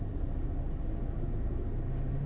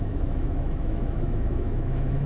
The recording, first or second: first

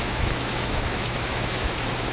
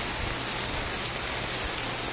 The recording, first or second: second